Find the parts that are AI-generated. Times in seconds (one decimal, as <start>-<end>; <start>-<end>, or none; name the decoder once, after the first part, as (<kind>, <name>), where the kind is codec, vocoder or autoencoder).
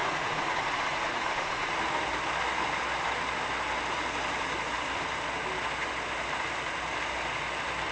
0.0-1.7 (vocoder, Vocos)